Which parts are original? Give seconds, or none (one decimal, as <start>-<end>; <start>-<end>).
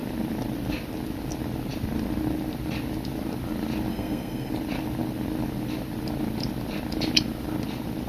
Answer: 0.0-3.9; 4.5-8.1